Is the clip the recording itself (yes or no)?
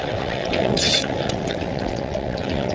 no